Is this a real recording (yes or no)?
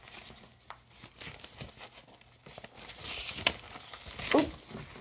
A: yes